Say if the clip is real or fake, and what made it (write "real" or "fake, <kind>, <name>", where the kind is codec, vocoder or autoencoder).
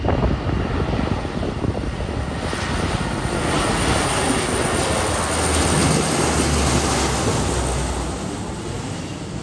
real